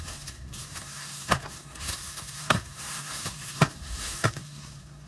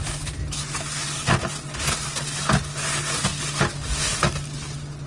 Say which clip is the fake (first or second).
first